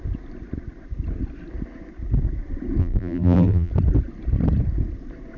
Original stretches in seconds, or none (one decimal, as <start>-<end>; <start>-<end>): 0.0-2.8; 3.7-5.4